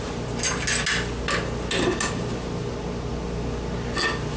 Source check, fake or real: real